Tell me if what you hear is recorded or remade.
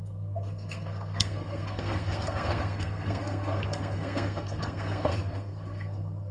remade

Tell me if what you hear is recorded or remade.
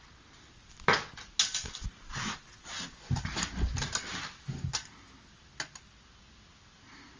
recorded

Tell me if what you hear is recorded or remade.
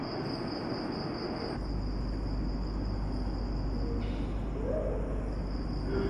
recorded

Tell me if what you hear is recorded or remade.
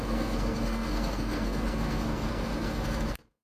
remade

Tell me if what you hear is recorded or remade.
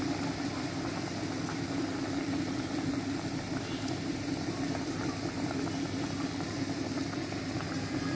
recorded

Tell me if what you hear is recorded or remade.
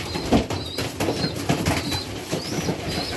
recorded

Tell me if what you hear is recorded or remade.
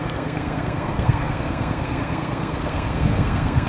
remade